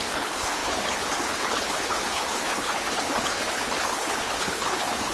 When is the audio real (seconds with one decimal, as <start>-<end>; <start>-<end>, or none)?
none